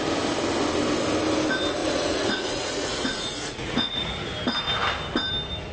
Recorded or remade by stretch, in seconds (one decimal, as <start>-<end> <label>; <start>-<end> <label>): 0.0-1.8 recorded; 1.8-4.3 remade; 4.3-5.7 recorded